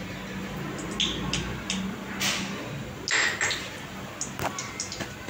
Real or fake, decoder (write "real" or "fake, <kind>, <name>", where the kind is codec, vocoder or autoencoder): real